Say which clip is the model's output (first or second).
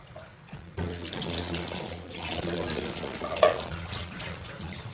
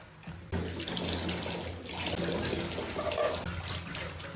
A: first